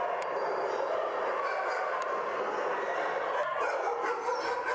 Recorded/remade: recorded